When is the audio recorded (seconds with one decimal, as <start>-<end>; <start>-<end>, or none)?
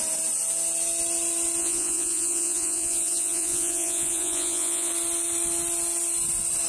0.0-1.6; 4.9-6.7